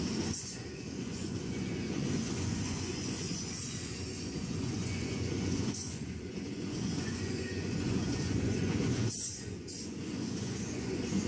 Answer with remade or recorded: remade